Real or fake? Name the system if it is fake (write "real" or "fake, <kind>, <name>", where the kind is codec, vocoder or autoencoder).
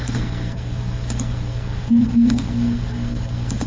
fake, codec, SNAC